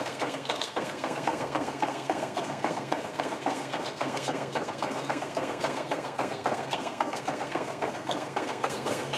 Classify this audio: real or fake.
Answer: fake